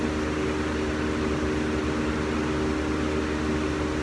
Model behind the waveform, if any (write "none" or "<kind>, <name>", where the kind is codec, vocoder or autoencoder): none